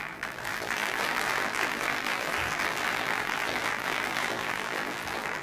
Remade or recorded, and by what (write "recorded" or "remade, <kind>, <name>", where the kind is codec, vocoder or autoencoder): remade, vocoder, BigVGAN v2